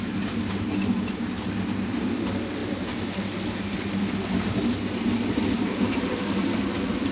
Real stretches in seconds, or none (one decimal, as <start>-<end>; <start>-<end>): 0.0-7.1